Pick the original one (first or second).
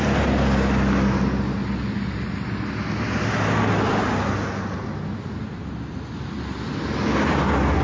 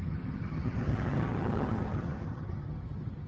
first